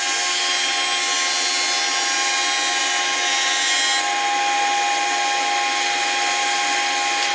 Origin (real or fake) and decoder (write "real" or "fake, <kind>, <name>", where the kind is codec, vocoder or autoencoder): real